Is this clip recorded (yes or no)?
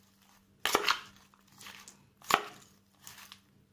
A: yes